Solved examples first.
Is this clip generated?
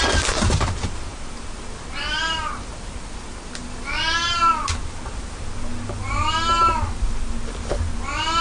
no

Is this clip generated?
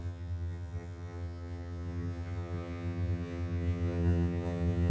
yes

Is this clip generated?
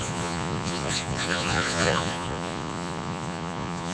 yes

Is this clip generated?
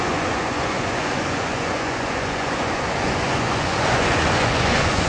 yes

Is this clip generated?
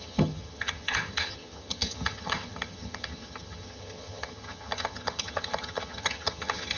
yes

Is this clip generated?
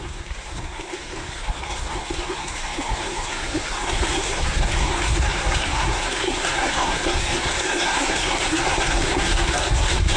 yes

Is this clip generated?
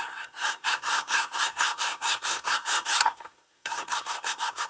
yes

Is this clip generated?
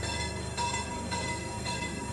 yes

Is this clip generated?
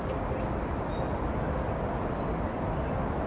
no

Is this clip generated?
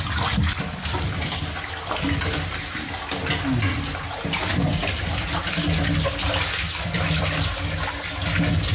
no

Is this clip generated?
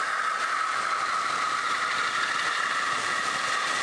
no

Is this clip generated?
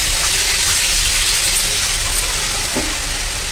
no